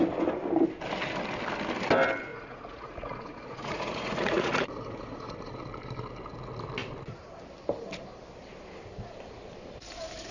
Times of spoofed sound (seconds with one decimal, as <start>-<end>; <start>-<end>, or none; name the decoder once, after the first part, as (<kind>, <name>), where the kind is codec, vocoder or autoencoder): 2.3-5.6 (vocoder, Vocos)